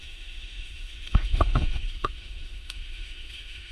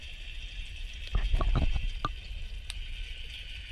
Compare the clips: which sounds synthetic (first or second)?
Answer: first